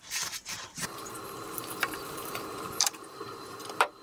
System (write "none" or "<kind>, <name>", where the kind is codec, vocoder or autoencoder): vocoder, BigVGAN v2